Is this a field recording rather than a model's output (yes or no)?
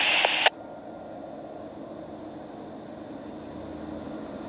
yes